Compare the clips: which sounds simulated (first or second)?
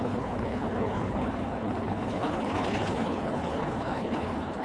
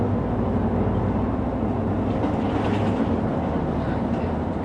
first